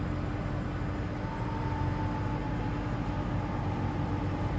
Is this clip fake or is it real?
real